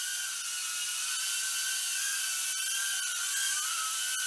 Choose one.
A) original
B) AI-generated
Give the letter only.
A